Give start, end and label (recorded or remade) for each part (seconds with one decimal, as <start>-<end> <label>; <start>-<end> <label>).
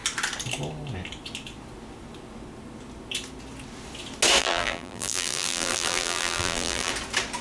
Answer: 0.0-4.4 recorded; 4.4-6.9 remade; 6.9-7.4 recorded